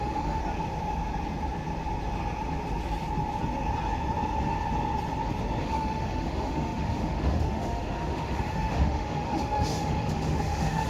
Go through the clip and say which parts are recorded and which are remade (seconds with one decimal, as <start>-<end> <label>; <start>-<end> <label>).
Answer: 0.0-0.4 remade; 0.4-5.6 recorded; 5.6-10.9 remade